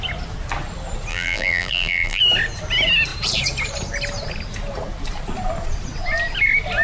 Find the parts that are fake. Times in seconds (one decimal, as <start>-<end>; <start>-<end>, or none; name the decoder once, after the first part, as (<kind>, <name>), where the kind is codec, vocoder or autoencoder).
1.1-2.2 (vocoder, BigVGAN v2)